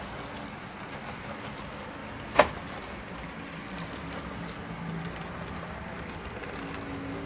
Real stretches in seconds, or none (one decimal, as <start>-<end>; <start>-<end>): 0.0-7.3